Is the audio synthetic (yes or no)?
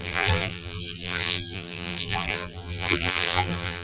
yes